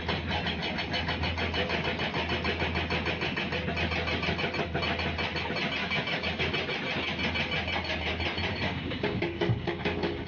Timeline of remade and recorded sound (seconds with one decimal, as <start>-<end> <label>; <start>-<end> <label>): 0.0-5.8 recorded; 5.8-6.4 remade; 6.4-8.5 recorded; 8.5-10.3 remade

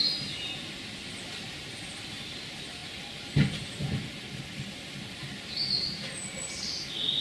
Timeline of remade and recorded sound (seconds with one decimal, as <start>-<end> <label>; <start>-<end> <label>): 0.0-7.2 recorded

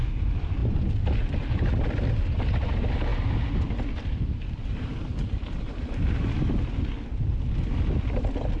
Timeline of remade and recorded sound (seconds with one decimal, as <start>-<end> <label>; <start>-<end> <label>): 0.0-8.6 recorded